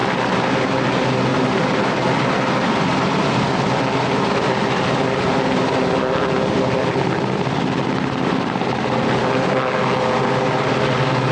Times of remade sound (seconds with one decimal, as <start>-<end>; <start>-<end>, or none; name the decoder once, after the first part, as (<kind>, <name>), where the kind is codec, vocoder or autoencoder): none